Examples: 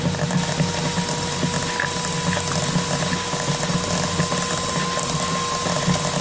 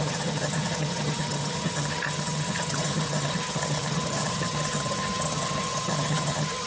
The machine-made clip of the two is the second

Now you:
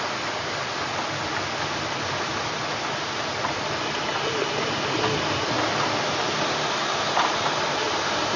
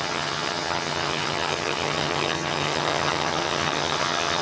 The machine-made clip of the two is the second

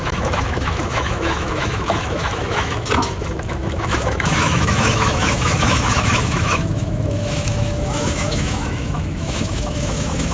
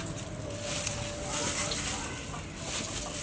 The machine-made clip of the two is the first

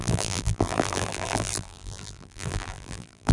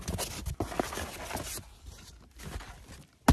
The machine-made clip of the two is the first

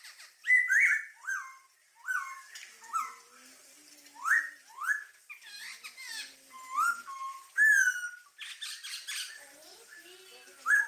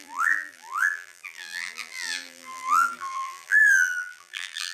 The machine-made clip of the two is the second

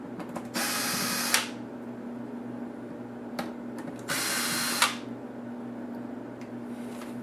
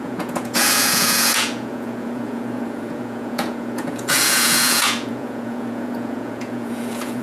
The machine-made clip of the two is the second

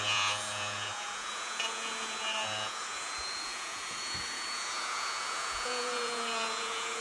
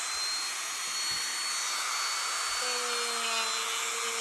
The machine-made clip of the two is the first